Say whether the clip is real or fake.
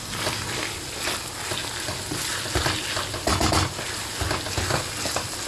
real